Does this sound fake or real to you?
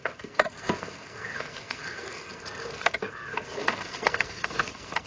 fake